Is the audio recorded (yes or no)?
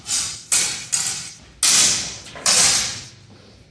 yes